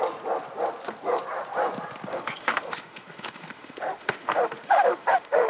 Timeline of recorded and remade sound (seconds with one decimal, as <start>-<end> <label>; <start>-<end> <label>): 0.0-2.1 recorded; 2.1-5.5 remade